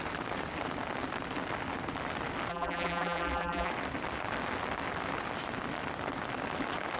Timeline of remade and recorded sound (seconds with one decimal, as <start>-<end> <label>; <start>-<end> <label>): 0.0-2.5 recorded; 2.5-3.7 remade; 3.7-7.0 recorded